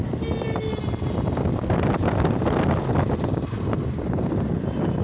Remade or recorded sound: recorded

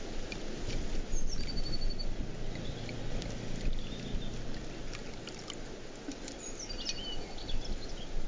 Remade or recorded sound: recorded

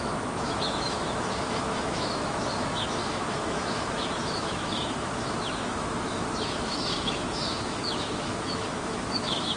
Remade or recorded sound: remade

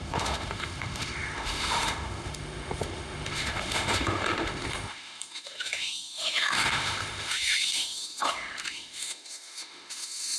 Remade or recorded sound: remade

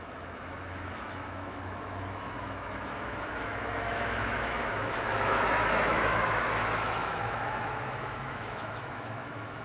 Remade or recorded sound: remade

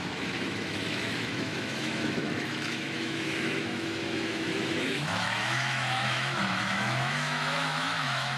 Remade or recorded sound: remade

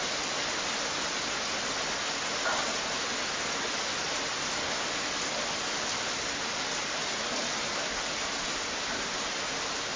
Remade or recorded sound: recorded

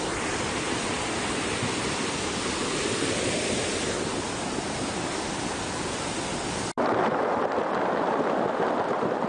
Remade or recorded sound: recorded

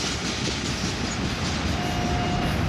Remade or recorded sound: recorded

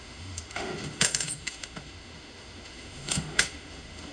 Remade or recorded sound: remade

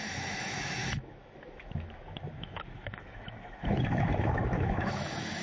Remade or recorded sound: remade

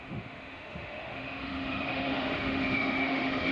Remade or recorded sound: remade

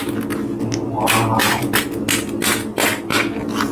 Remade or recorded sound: recorded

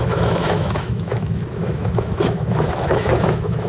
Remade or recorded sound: remade